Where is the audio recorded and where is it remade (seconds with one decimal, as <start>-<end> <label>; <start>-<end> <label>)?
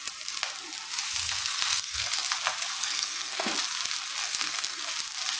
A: 0.0-1.2 recorded; 1.2-2.1 remade; 2.1-2.8 recorded; 2.8-3.5 remade; 3.5-4.2 recorded; 4.2-4.8 remade; 4.8-5.4 recorded